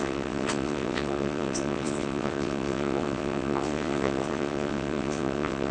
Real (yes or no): no